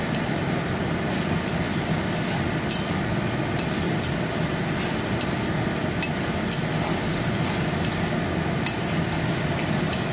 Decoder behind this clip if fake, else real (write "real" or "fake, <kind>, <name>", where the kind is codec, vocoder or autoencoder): real